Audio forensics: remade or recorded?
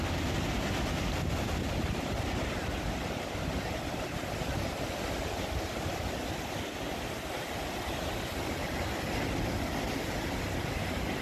recorded